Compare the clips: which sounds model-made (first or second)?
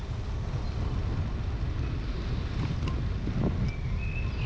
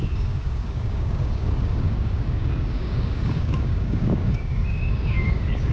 second